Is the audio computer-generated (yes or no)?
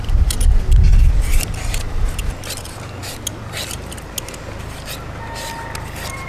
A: no